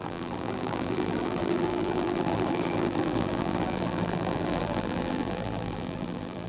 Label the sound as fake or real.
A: fake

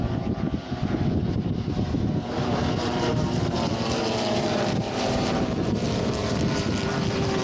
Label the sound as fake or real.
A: fake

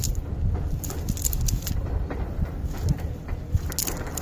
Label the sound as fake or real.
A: real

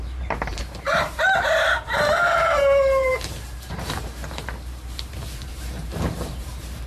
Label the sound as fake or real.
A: fake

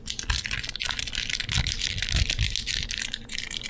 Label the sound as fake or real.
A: real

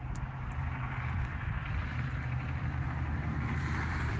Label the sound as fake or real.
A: fake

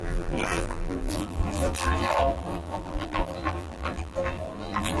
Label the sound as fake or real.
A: fake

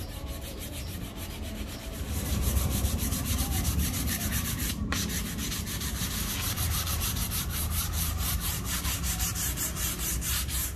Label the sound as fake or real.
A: fake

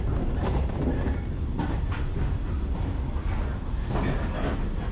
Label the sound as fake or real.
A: real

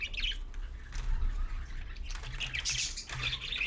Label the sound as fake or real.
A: real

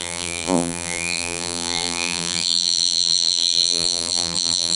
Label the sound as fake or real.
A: fake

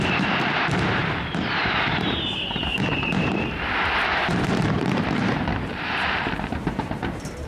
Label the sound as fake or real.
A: fake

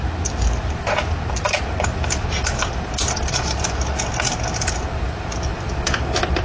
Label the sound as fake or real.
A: real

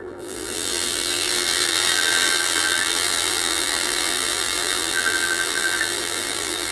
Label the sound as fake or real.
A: fake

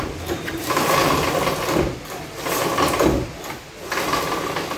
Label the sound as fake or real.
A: real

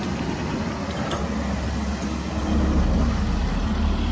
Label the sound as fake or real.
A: real